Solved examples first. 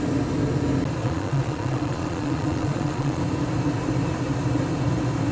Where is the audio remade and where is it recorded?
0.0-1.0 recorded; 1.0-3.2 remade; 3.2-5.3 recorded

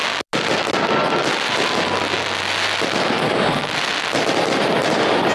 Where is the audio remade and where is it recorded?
0.0-5.3 recorded

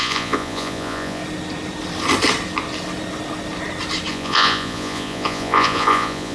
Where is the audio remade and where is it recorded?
0.0-1.2 remade; 1.2-4.1 recorded; 4.1-6.3 remade